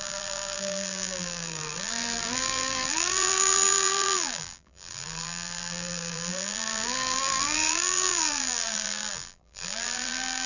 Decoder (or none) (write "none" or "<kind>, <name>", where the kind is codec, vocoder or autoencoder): vocoder, BigVGAN v2